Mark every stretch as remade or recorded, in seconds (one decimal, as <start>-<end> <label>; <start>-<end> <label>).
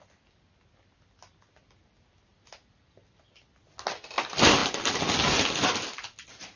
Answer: 0.0-6.6 recorded